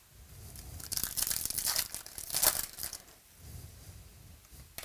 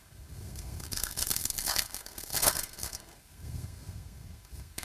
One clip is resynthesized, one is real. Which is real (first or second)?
first